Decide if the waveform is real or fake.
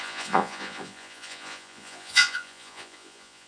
fake